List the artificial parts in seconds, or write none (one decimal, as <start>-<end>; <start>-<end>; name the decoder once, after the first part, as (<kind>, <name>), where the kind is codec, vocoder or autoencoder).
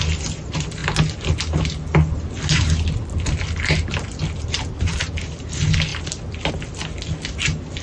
none